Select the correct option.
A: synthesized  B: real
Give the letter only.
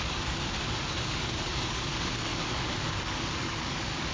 A